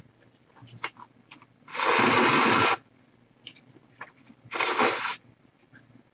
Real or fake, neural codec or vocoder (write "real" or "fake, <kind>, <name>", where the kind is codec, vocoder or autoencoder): real